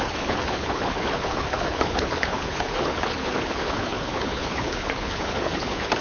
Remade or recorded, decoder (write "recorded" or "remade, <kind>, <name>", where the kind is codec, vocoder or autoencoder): remade, codec, HILCodec